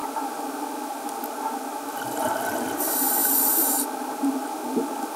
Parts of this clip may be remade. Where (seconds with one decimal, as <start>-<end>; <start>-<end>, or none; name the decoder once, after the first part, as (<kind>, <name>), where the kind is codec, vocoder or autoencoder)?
none